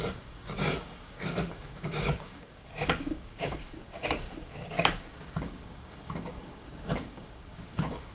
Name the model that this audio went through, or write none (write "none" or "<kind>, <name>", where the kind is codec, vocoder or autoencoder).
codec, DAC